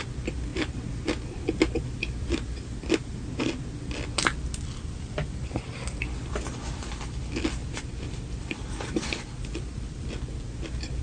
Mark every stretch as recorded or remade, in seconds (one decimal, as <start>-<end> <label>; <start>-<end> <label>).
0.0-0.5 recorded; 0.5-1.0 remade; 1.0-11.0 recorded